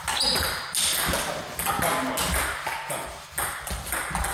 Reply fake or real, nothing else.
real